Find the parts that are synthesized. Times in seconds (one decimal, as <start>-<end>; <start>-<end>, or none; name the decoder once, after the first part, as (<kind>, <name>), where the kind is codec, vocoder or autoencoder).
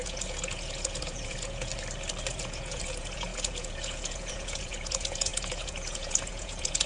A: 0.0-1.7 (vocoder, Vocos); 2.3-6.9